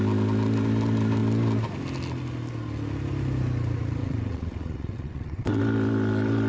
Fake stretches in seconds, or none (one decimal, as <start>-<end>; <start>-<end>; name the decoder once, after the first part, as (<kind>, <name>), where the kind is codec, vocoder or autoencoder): 4.0-5.6 (vocoder, WaveNeXt)